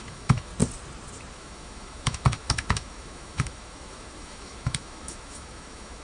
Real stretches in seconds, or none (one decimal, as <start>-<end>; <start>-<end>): 0.5-1.3